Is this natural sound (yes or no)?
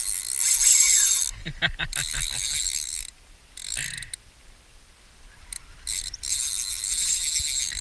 yes